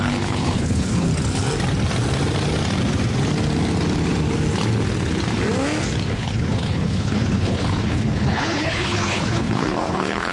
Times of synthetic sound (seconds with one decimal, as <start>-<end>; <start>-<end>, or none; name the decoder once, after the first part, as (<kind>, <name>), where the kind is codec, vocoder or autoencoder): 0.0-1.1 (codec, HILCodec); 6.1-10.3